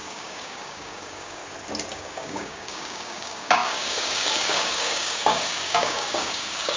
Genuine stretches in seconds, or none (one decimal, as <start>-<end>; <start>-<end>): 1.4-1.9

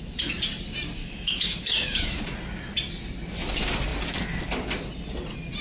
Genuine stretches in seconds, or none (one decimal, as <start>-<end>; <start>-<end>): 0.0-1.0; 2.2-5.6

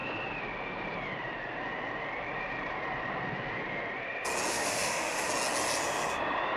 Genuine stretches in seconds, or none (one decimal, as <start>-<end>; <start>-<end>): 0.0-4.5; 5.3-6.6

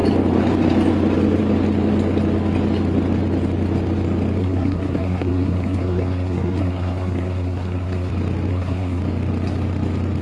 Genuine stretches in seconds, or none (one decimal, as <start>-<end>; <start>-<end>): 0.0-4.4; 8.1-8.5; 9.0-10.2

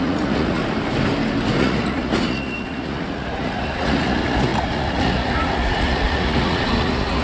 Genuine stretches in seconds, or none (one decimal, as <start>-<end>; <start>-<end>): 0.6-1.6